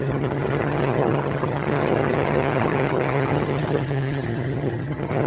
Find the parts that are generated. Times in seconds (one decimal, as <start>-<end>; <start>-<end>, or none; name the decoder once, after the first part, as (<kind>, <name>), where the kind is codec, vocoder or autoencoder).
0.0-5.3 (vocoder, HiFi-GAN)